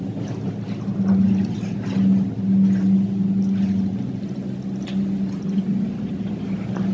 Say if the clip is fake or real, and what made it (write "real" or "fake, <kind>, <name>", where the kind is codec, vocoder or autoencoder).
real